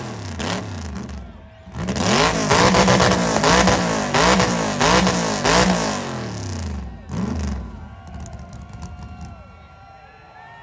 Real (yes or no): yes